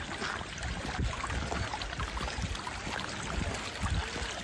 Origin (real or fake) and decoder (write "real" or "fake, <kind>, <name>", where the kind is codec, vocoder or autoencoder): real